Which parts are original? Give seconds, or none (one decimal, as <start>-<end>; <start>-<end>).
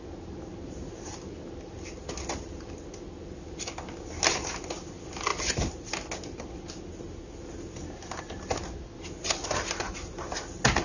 0.0-10.8